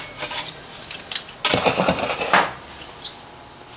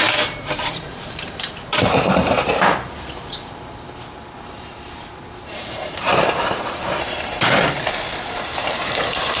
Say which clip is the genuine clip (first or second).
first